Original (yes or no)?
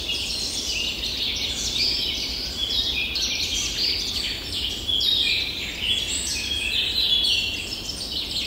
yes